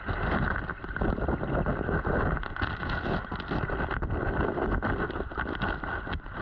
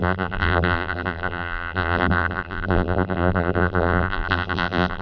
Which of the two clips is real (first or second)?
first